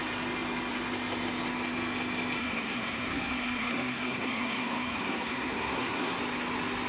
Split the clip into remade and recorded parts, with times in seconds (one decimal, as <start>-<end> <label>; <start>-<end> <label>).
0.0-2.4 recorded; 2.4-6.2 remade; 6.2-6.9 recorded

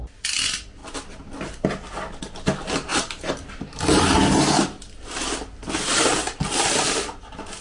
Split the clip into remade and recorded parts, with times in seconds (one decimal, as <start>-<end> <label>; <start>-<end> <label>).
0.0-7.6 recorded

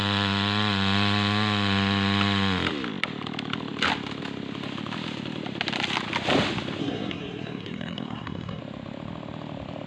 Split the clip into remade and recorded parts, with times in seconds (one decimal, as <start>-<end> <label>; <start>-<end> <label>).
0.0-6.8 recorded; 6.8-8.6 remade; 8.6-9.9 recorded

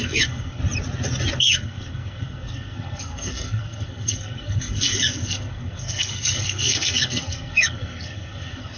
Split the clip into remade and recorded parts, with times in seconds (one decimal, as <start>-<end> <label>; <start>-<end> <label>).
0.0-0.6 remade; 0.6-1.4 recorded; 1.4-8.8 remade